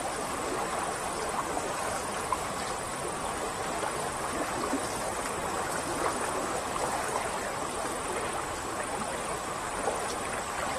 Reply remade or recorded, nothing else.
remade